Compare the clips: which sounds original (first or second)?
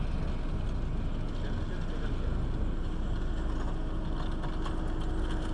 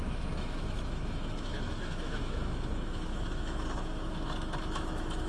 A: first